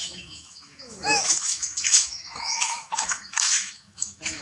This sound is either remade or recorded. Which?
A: remade